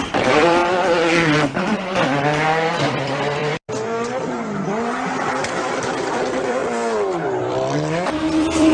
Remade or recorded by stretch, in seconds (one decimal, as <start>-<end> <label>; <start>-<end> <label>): 0.0-0.6 remade; 0.6-1.6 recorded; 1.6-3.4 remade; 3.4-5.7 recorded; 5.7-6.6 remade; 6.6-7.4 recorded; 7.4-8.7 remade